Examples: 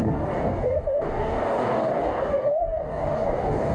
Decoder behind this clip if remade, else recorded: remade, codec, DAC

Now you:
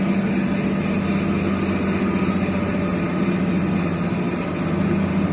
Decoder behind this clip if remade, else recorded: recorded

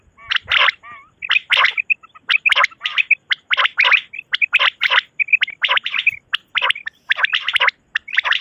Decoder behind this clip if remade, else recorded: recorded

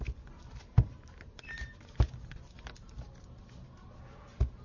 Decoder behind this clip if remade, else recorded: recorded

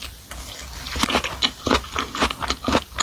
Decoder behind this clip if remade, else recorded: recorded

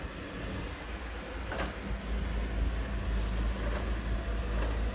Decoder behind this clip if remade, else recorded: recorded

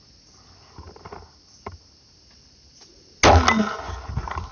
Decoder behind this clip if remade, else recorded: recorded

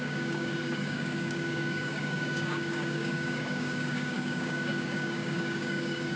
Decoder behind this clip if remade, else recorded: remade, codec, DAC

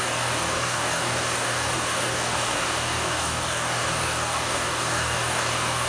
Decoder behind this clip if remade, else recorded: remade, codec, DAC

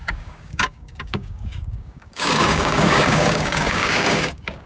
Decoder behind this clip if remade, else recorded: remade, codec, DAC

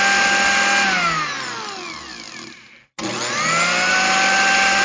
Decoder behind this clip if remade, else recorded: recorded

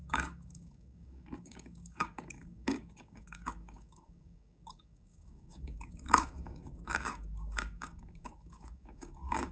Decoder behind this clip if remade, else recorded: remade, codec, DAC